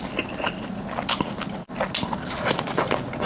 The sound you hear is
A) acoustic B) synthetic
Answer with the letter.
A